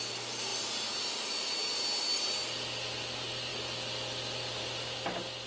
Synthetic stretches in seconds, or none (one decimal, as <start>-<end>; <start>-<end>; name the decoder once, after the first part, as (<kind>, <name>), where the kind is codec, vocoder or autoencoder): none